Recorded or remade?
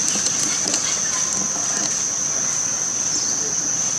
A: recorded